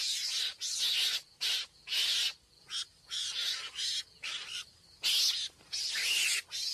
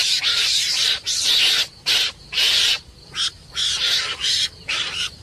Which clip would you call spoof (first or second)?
second